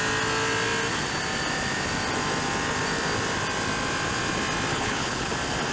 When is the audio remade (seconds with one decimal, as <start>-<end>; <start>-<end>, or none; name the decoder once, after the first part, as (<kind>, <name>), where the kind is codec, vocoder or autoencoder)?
4.7-5.3 (codec, HILCodec)

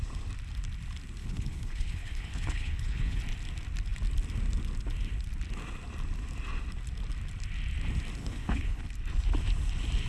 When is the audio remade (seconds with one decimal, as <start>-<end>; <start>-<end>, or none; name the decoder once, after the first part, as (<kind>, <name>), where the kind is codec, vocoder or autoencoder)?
1.2-3.2 (codec, HILCodec); 8.2-8.8

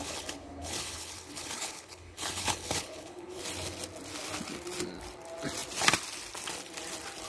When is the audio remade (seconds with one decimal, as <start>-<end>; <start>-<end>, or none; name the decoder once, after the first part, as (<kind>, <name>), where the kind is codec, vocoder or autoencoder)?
0.0-3.4 (codec, HILCodec)

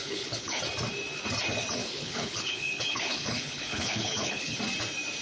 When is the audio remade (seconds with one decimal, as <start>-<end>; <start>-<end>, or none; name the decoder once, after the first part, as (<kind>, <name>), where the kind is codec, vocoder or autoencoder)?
0.0-0.6 (codec, HILCodec); 1.8-4.6